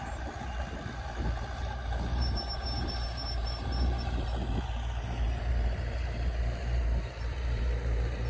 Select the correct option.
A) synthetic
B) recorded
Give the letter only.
A